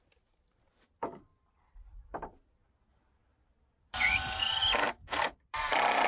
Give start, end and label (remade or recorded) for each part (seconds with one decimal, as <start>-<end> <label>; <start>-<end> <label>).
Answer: 0.0-1.3 recorded; 1.3-2.5 remade; 2.5-3.2 recorded; 3.2-6.1 remade